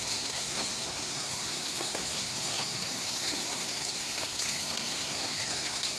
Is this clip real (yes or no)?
no